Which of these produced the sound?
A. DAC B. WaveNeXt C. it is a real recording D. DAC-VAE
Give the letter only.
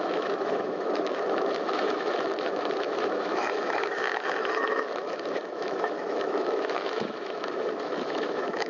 D